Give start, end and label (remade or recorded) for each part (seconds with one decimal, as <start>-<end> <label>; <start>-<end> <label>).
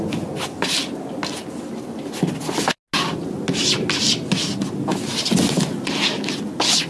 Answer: 0.0-6.9 recorded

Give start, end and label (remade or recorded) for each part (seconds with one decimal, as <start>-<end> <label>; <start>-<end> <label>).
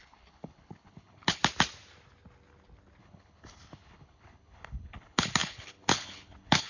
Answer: 0.0-1.4 remade; 1.4-3.0 recorded; 3.0-6.7 remade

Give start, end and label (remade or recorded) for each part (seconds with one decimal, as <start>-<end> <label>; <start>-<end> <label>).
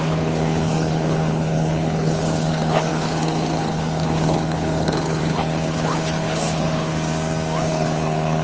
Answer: 0.0-6.9 remade; 6.9-7.6 recorded; 7.6-8.4 remade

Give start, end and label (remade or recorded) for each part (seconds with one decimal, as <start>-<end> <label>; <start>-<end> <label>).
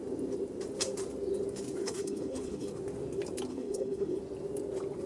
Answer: 0.0-1.8 recorded; 1.8-2.7 remade; 2.7-3.5 recorded; 3.5-4.2 remade; 4.2-5.1 recorded